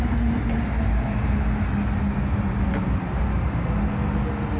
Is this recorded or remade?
recorded